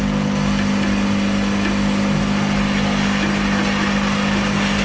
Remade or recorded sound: recorded